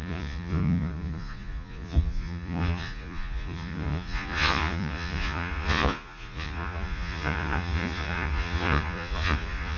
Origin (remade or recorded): remade